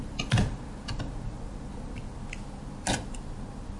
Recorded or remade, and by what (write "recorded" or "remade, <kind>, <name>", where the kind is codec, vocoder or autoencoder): recorded